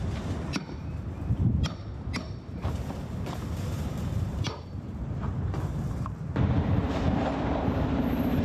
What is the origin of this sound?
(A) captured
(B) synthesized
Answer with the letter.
B